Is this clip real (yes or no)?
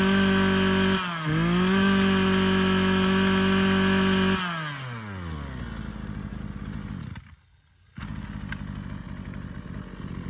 yes